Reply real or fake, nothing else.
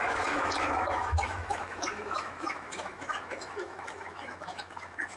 fake